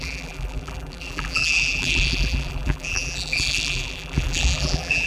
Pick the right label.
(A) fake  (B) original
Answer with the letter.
A